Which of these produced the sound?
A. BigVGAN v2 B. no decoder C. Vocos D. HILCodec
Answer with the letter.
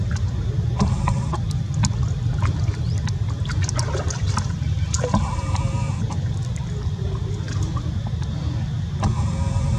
B